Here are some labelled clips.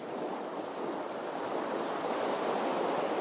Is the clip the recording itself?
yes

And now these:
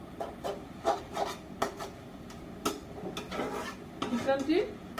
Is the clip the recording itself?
yes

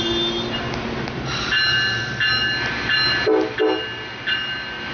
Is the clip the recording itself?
yes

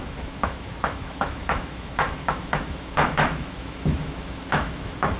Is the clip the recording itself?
no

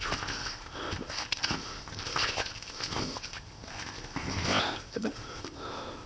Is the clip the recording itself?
no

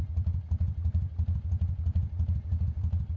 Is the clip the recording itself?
yes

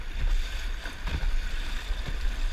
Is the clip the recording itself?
yes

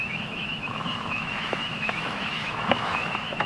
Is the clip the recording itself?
no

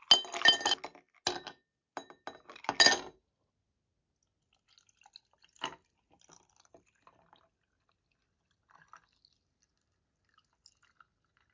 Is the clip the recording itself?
yes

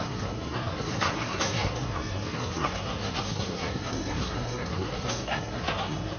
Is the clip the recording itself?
no